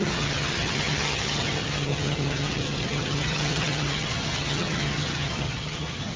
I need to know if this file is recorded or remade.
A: remade